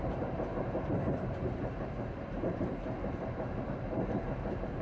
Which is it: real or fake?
fake